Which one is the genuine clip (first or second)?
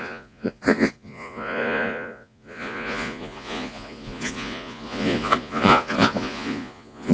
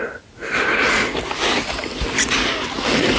second